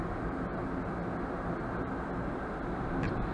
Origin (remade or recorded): recorded